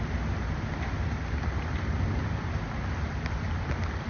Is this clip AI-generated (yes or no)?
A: no